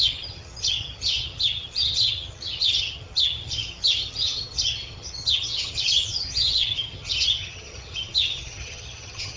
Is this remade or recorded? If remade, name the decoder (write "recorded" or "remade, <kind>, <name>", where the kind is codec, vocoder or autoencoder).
remade, vocoder, HiFi-GAN